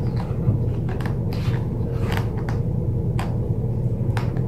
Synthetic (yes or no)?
no